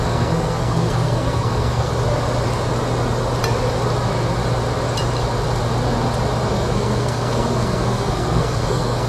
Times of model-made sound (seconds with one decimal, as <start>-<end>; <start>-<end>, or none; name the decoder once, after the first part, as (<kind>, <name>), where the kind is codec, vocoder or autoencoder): 0.0-1.9 (codec, SNAC); 6.5-9.1